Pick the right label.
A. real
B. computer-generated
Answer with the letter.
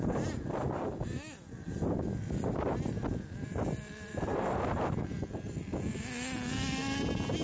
A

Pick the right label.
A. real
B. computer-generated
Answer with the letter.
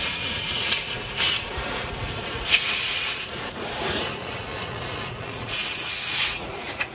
B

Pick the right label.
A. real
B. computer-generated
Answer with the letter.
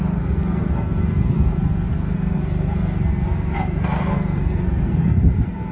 B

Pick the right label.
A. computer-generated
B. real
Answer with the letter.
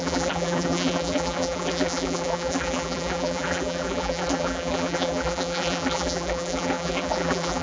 A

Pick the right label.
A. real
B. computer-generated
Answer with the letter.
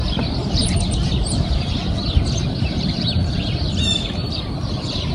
B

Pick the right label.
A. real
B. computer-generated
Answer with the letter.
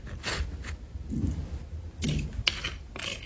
A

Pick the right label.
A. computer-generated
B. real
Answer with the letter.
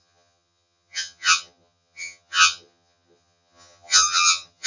A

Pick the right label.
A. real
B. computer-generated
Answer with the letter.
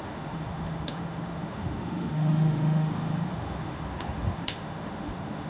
B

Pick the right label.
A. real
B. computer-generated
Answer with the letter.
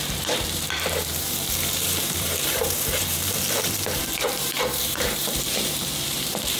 B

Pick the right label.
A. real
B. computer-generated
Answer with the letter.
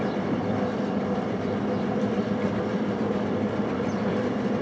B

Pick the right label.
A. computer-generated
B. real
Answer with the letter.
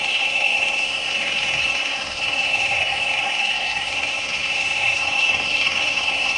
A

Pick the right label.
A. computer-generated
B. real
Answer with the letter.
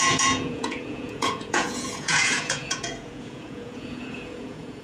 A